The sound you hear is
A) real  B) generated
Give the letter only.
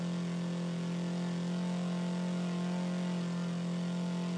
A